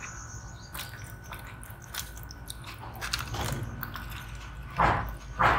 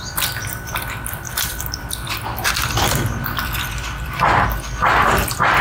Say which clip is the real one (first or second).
first